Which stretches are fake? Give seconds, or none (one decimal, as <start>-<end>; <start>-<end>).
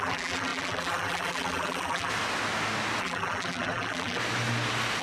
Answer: 0.0-2.1; 3.0-4.2